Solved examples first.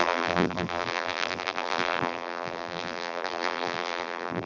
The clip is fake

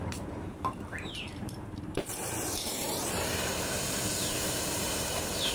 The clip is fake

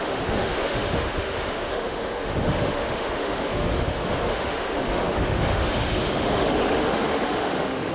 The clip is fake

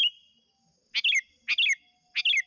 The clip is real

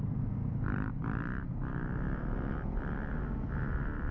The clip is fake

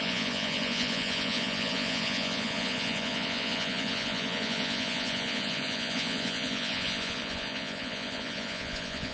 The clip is fake